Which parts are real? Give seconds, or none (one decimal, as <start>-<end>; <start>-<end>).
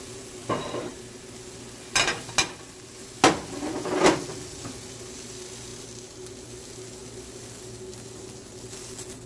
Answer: 0.0-0.4; 1.0-5.7; 6.3-9.3